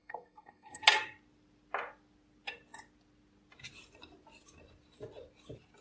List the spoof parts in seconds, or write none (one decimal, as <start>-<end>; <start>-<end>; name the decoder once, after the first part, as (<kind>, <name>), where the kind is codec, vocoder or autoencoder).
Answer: 0.0-0.8 (codec, SNAC)